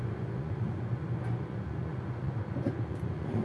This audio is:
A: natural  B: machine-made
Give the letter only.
B